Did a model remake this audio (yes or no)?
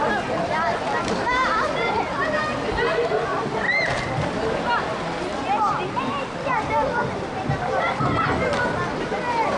no